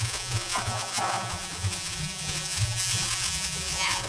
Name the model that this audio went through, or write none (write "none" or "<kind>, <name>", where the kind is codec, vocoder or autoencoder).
vocoder, Vocos